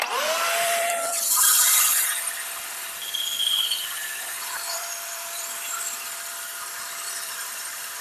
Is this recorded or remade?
remade